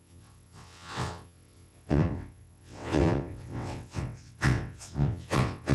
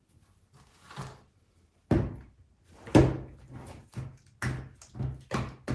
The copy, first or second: first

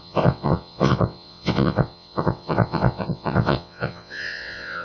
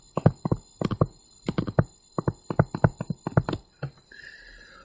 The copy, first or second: first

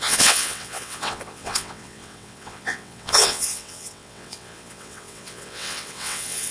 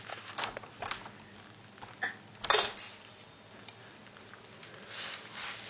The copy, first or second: first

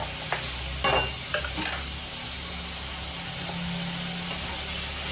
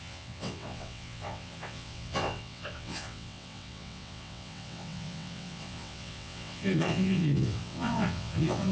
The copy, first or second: second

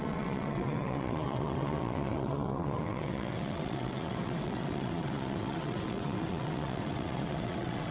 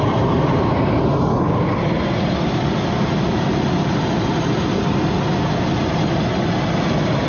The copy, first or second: first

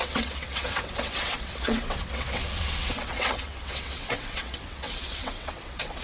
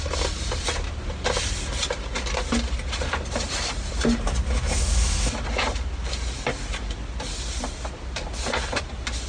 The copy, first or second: first